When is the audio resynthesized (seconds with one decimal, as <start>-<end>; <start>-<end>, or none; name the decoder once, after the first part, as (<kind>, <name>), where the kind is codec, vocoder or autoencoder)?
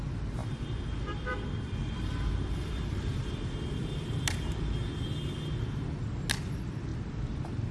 0.4-4.5 (vocoder, BigVGAN v2); 6.9-7.7